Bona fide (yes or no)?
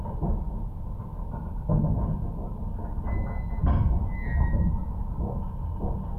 yes